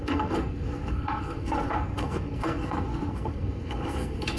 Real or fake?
fake